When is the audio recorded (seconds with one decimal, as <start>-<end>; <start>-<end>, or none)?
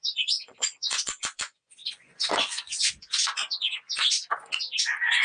4.0-4.8